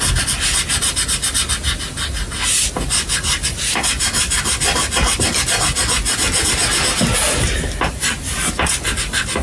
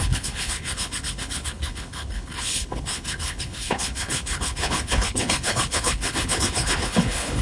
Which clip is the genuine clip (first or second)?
first